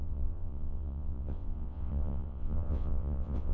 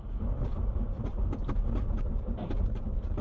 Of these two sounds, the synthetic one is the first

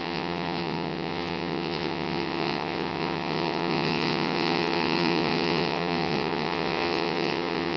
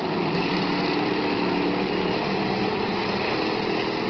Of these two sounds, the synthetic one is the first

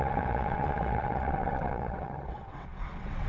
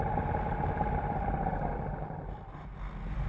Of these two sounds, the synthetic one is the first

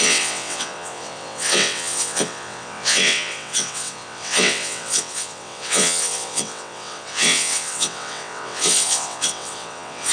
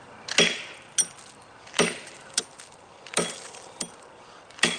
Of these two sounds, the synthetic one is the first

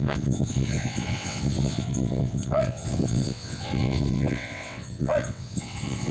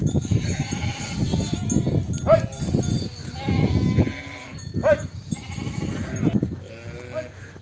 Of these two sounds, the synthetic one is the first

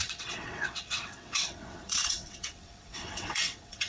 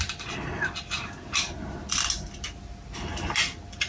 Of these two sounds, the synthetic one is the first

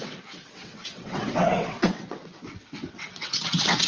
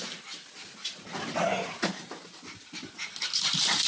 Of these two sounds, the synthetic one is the first